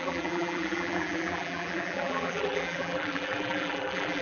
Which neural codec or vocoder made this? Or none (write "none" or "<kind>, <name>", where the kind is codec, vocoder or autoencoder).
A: vocoder, BigVGAN v2